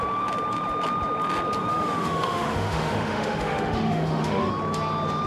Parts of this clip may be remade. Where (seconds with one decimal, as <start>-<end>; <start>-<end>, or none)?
1.7-4.5